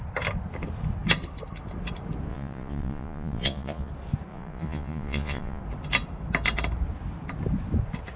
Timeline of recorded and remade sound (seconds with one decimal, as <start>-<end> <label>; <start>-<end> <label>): 0.0-2.3 recorded; 2.3-3.9 remade; 3.9-4.3 recorded; 4.3-5.6 remade; 5.6-8.2 recorded